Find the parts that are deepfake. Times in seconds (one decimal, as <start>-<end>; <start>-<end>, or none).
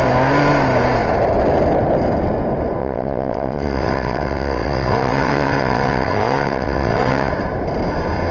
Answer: 2.8-7.3